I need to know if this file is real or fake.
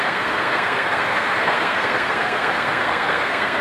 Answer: fake